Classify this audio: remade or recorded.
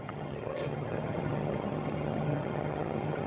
remade